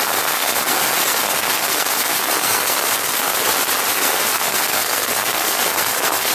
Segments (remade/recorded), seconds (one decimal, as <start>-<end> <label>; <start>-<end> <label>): 0.0-3.4 remade; 3.4-3.9 recorded; 3.9-6.3 remade